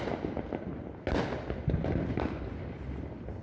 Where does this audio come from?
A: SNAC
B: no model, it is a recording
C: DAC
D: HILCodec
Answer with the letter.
B